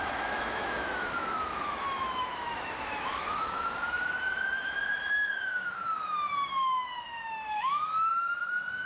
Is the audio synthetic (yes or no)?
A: yes